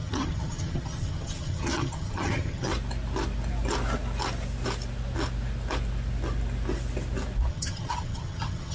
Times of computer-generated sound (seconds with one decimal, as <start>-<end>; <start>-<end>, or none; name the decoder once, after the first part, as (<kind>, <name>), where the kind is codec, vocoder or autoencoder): 0.0-2.7 (vocoder, HiFi-GAN); 7.5-8.7